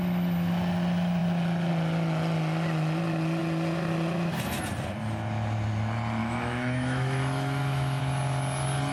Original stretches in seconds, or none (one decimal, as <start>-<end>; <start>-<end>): 0.0-6.2; 8.0-8.9